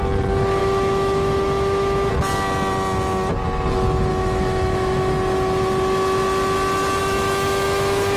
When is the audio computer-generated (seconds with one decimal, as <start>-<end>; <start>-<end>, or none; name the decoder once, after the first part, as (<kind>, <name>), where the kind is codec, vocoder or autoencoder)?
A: 0.6-2.1 (autoencoder, DAC-VAE); 4.1-5.1; 7.0-8.2